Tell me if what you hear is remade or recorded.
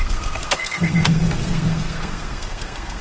remade